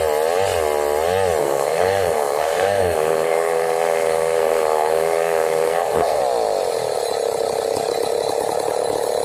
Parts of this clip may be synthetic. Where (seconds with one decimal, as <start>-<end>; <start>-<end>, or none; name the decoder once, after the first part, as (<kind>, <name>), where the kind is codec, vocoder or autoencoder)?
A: 1.4-6.2 (codec, SNAC)